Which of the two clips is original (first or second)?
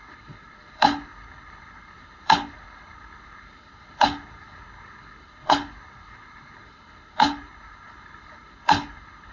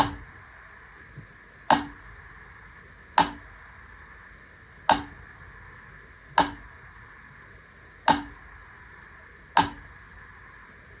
second